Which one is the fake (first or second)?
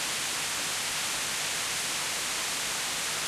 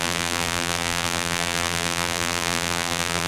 second